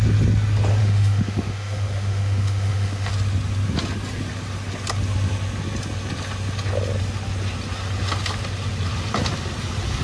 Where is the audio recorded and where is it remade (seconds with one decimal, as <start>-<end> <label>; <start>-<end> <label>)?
0.0-0.8 recorded; 0.8-3.1 remade; 3.1-10.0 recorded